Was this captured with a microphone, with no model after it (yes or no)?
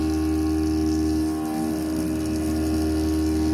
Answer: yes